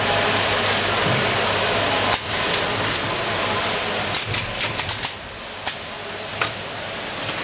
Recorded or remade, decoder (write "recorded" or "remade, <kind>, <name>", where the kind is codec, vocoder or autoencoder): recorded